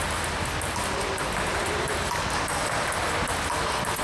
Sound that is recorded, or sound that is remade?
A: recorded